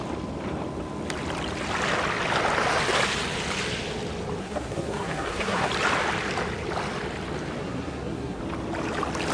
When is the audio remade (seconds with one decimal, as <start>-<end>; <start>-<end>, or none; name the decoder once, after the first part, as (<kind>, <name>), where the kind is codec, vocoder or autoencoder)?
4.4-5.7 (codec, SNAC); 7.6-8.4